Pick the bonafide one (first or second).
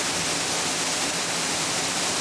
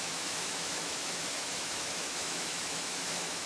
first